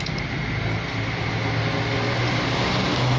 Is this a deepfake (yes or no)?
no